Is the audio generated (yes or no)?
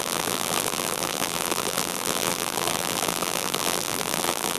yes